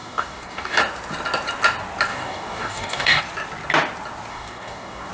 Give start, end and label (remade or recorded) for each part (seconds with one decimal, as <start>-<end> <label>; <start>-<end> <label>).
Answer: 0.0-0.8 remade; 0.8-2.1 recorded; 2.1-3.2 remade; 3.2-4.3 recorded; 4.3-5.1 remade